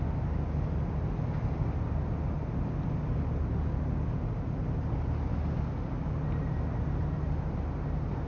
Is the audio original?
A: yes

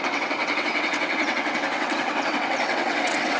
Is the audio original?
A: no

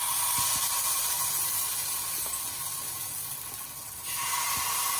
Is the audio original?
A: yes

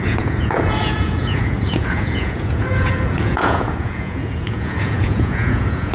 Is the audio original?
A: no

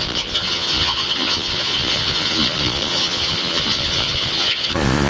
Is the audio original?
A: no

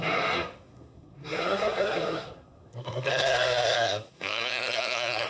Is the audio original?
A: no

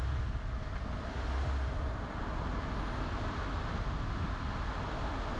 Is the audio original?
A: yes